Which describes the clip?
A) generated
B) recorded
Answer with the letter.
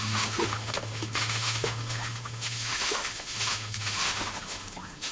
A